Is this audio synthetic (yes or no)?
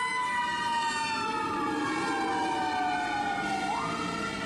no